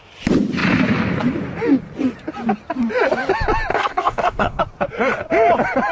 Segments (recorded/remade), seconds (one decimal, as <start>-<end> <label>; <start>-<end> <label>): 0.0-3.7 recorded; 3.7-4.6 remade; 4.6-5.9 recorded